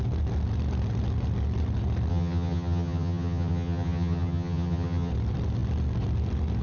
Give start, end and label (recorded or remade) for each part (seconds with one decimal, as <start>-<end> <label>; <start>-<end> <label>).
0.0-2.1 recorded; 2.1-5.1 remade; 5.1-6.6 recorded